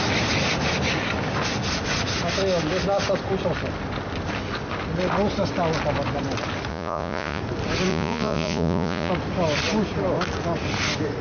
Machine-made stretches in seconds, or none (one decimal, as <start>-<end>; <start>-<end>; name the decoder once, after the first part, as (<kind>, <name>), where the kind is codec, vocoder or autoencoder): 6.7-7.4 (vocoder, Vocos); 7.9-9.1